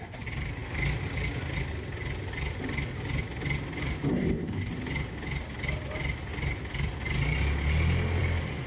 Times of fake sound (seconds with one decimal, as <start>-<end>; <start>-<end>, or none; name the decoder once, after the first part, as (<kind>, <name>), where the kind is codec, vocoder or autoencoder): 4.1-4.7 (codec, ZipCodec)

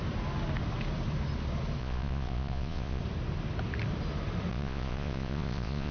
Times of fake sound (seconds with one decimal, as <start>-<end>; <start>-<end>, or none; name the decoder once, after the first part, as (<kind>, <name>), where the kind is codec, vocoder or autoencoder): 1.8-3.0 (vocoder, Vocos); 4.5-5.9

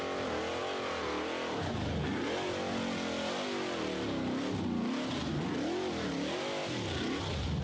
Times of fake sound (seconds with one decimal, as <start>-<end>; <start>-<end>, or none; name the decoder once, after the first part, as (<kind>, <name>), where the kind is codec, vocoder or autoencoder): none

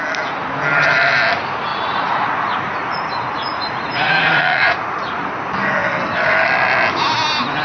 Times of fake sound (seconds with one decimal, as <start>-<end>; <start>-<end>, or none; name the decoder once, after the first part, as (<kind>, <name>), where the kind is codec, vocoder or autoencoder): 1.7-5.3 (vocoder, Vocos)

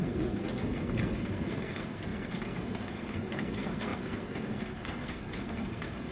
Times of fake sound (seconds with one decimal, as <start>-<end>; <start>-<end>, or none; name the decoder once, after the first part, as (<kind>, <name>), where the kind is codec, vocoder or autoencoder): 0.0-6.1 (codec, SNAC)

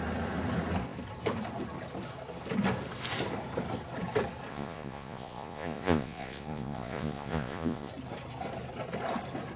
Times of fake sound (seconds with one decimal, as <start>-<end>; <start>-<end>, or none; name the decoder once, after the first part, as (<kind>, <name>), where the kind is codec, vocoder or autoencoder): 4.5-7.9 (vocoder, Vocos)